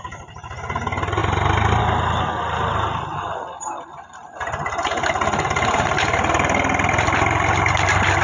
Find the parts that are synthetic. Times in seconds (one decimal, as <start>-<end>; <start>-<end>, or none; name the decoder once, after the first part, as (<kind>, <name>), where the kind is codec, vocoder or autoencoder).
none